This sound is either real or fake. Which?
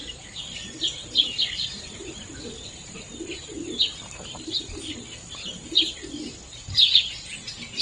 fake